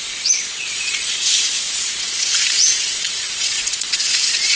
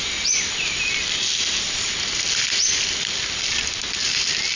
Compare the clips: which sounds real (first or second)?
second